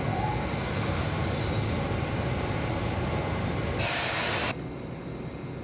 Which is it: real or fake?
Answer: real